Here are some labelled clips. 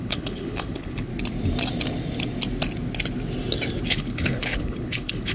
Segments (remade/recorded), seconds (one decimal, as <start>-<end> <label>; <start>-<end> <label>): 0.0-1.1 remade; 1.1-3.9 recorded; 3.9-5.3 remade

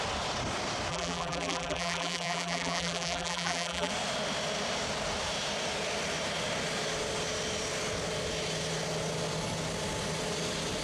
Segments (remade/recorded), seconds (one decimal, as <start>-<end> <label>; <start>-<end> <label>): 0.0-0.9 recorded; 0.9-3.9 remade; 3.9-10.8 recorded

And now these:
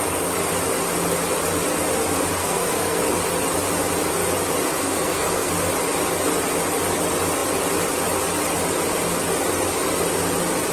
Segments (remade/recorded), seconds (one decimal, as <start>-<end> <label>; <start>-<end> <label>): 0.0-2.4 recorded; 2.4-3.0 remade; 3.0-4.7 recorded; 4.7-5.5 remade; 5.5-10.7 recorded

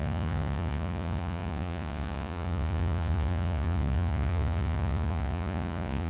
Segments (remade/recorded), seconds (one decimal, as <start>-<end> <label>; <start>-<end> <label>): 0.0-6.1 remade

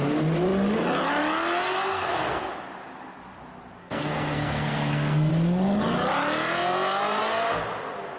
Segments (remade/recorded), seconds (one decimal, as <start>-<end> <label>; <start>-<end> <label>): 0.0-1.9 recorded; 1.9-2.5 remade; 2.5-3.8 recorded; 3.8-5.3 remade; 5.3-8.2 recorded

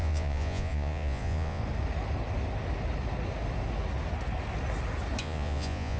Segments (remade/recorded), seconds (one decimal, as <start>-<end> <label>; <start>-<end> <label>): 0.0-1.6 remade; 1.6-5.2 recorded; 5.2-6.0 remade

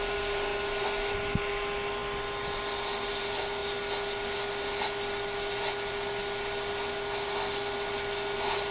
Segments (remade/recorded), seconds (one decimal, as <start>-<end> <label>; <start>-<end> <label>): 0.0-8.7 recorded

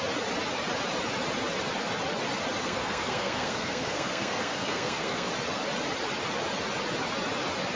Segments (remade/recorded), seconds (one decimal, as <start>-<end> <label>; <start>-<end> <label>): 0.0-2.6 recorded; 2.6-5.3 remade; 5.3-7.8 recorded